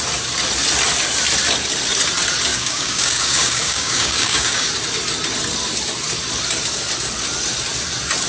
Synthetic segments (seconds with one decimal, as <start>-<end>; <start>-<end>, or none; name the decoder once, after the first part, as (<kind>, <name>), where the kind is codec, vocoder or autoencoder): 2.5-4.7 (codec, DAC)